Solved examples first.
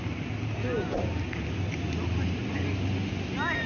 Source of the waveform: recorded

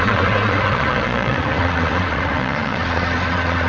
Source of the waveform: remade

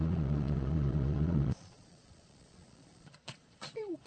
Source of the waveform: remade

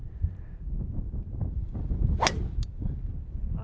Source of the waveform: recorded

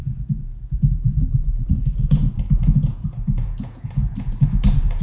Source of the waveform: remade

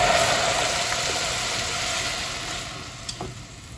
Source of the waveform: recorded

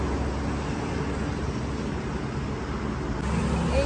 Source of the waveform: recorded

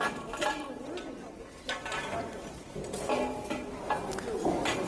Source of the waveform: recorded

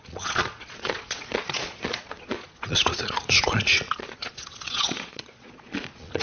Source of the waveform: remade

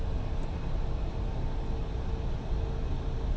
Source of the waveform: recorded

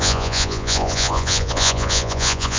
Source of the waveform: remade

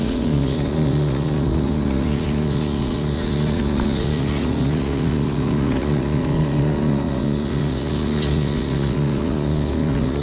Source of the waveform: remade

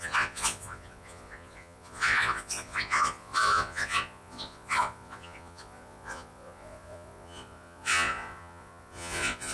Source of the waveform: remade